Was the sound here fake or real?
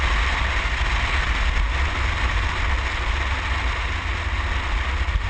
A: real